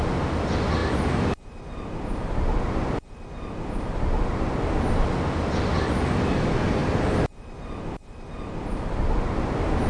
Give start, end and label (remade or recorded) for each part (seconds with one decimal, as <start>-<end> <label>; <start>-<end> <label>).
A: 0.0-9.9 recorded